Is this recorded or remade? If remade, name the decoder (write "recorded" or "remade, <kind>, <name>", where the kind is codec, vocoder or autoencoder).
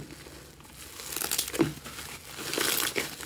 recorded